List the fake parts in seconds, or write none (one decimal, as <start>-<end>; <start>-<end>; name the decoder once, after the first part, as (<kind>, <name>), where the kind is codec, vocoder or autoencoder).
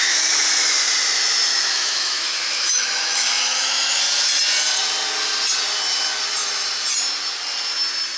1.5-4.0 (autoencoder, DAC-VAE)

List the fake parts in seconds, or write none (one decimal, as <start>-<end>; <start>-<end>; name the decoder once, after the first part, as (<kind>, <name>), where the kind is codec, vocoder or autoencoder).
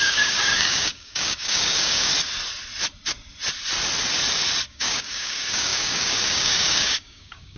0.0-2.1 (codec, DAC); 4.7-7.6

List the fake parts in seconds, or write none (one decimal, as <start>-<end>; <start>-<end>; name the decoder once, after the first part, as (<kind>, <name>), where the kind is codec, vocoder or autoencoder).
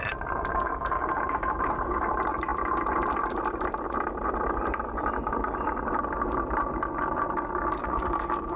0.5-2.1 (codec, DAC); 7.8-8.6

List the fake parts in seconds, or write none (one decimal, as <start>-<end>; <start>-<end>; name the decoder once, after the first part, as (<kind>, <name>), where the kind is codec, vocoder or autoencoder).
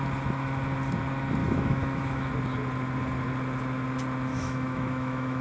1.4-2.3 (autoencoder, DAC-VAE); 4.3-5.4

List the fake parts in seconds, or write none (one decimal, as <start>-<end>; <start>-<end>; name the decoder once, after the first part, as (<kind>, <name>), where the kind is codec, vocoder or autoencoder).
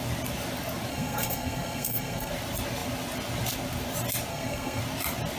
0.9-2.3 (codec, SNAC); 4.3-4.8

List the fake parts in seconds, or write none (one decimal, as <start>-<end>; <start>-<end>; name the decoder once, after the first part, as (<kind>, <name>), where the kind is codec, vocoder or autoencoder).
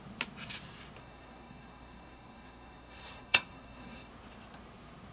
1.0-4.1 (codec, SNAC)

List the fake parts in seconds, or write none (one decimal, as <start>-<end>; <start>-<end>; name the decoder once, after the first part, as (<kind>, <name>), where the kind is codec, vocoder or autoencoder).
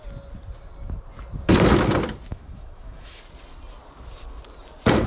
2.3-3.2 (autoencoder, DAC-VAE)